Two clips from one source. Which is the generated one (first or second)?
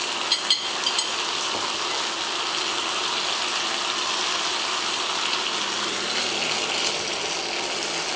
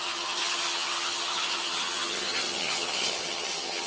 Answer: second